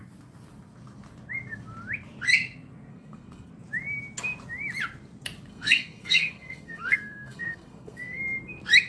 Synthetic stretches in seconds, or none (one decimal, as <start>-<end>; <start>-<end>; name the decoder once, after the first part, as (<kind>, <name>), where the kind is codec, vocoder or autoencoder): 2.9-3.5 (codec, SNAC); 5.5-8.2